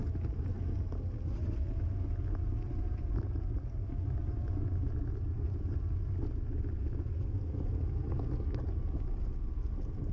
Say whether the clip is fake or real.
real